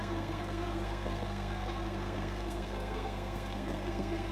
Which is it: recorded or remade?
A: remade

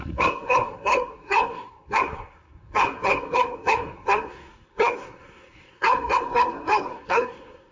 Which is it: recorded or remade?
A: remade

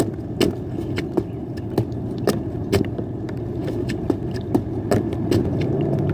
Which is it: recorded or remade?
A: recorded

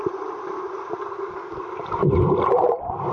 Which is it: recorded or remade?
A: recorded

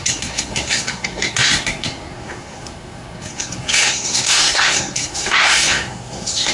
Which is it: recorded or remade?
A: remade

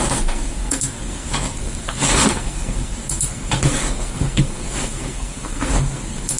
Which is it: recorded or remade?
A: remade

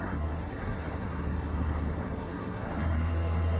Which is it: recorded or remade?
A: remade